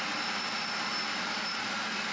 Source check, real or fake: real